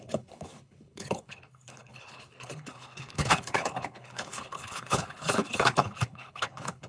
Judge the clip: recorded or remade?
remade